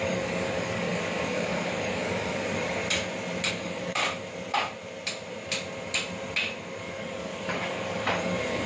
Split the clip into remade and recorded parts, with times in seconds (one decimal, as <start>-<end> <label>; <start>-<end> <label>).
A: 0.0-2.8 remade; 2.8-3.5 recorded; 3.5-4.0 remade; 4.0-6.8 recorded; 6.8-8.7 remade